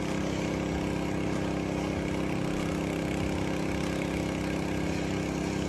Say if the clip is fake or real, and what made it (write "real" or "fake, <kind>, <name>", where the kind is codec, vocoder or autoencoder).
real